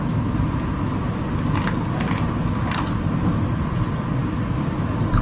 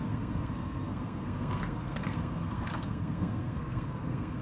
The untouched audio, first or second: first